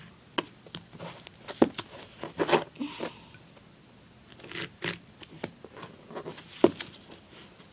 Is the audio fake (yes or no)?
no